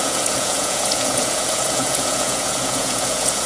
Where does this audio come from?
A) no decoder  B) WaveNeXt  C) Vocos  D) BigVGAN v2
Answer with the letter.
C